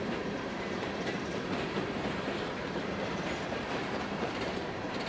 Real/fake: fake